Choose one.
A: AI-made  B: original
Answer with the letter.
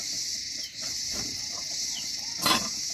A